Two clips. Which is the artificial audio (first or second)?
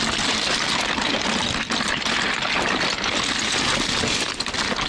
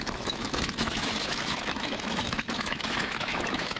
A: second